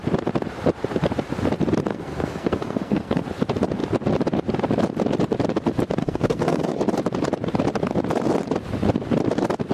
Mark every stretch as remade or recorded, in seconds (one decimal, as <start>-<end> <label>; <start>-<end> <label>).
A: 0.0-1.9 recorded; 1.9-3.2 remade; 3.2-6.0 recorded; 6.0-6.8 remade; 6.8-9.7 recorded